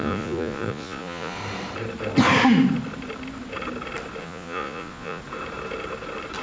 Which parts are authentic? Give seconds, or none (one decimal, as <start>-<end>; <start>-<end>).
1.4-4.2; 5.2-6.4